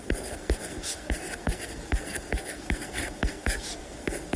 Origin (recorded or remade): remade